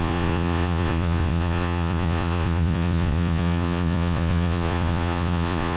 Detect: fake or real fake